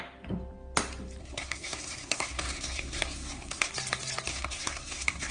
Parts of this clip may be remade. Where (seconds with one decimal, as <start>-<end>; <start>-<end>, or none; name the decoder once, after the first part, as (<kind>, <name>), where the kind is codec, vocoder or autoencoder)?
1.2-3.7 (codec, SNAC); 4.3-5.3